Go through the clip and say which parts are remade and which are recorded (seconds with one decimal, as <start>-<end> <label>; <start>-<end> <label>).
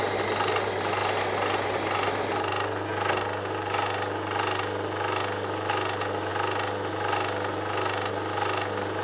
0.0-9.0 recorded